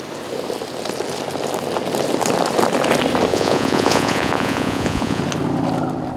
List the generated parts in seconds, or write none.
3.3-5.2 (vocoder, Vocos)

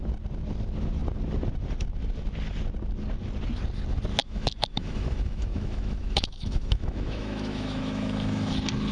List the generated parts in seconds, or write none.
4.2-8.5 (autoencoder, DAC-VAE)

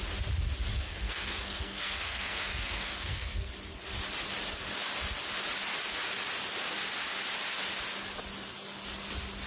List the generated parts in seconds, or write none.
0.7-3.5 (codec, SNAC)